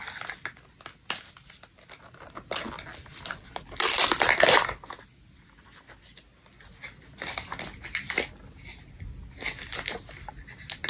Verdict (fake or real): real